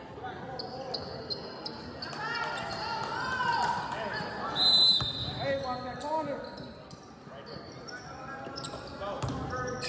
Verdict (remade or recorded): recorded